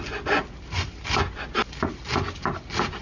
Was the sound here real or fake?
real